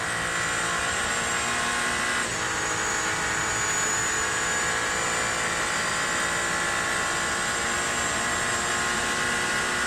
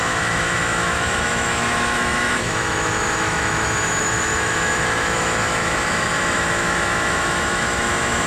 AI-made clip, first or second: second